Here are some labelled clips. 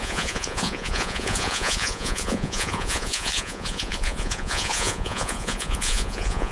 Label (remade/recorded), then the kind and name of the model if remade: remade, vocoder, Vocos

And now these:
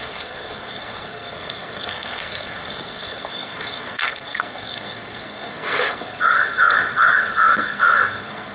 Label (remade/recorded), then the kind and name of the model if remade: remade, codec, SNAC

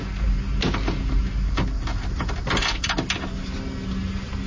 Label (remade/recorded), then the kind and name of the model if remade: recorded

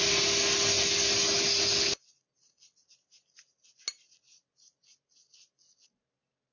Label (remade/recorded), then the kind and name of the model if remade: recorded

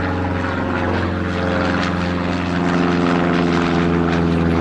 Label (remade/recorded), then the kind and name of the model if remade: recorded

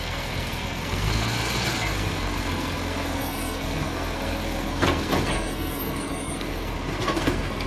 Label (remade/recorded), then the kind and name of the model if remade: remade, codec, SNAC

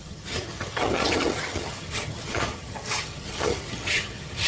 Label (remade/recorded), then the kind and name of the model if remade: remade, vocoder, HiFi-GAN